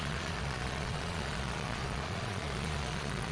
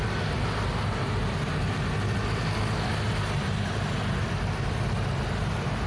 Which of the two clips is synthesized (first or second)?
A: first